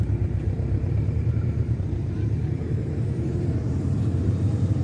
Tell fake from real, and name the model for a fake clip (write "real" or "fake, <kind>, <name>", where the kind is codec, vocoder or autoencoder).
fake, vocoder, BigVGAN v2